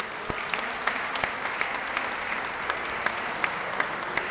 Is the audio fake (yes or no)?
no